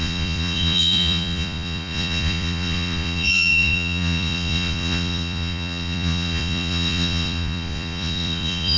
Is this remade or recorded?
remade